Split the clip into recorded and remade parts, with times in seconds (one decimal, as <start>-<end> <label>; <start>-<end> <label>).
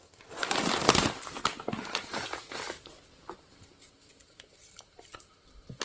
0.0-5.8 recorded